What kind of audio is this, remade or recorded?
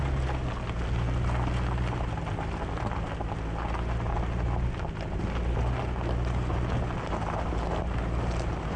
recorded